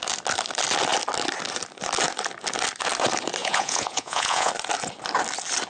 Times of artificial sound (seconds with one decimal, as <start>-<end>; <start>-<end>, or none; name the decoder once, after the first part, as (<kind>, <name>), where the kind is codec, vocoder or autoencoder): 3.4-4.5 (vocoder, Vocos)